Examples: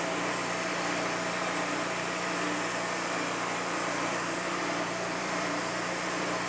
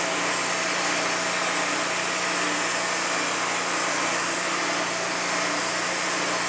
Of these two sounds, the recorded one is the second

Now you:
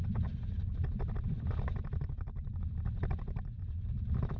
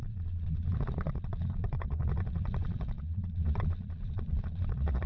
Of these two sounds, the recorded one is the first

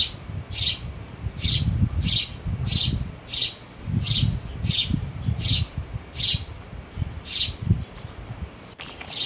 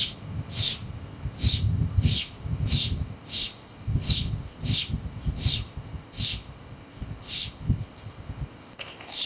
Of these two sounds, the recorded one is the first